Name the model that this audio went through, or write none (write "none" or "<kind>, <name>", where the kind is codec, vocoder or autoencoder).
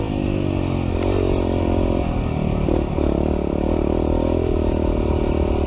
none